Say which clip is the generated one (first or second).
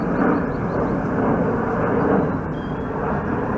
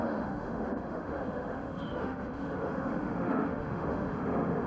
second